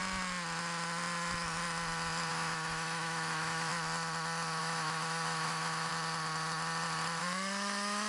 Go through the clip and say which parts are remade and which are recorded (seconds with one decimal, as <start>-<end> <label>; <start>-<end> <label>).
0.0-2.3 recorded; 2.3-3.7 remade; 3.7-4.6 recorded; 4.6-5.9 remade; 5.9-7.2 recorded; 7.2-8.1 remade